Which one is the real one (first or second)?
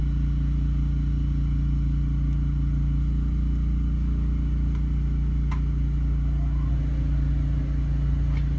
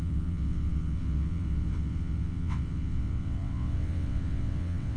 first